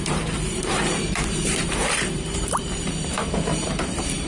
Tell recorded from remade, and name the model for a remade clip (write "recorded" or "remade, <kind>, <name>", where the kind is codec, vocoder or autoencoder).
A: remade, vocoder, BigVGAN v2